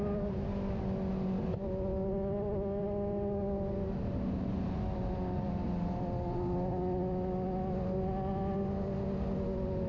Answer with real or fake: real